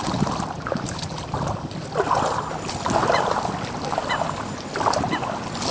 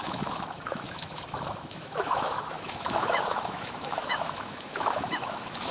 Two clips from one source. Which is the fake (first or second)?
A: second